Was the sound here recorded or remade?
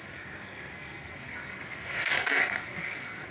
remade